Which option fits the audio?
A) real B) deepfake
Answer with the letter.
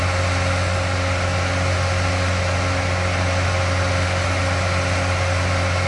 A